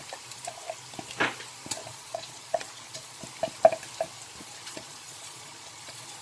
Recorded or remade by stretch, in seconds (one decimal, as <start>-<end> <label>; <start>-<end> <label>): 0.0-1.8 recorded; 1.8-3.2 remade; 3.2-4.4 recorded; 4.4-6.2 remade